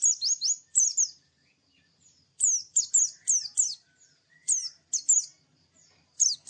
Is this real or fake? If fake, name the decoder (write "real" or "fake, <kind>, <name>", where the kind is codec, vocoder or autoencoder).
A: real